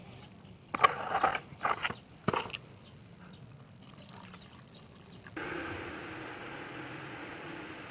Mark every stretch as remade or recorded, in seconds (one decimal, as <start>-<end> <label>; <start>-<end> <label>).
0.0-7.9 recorded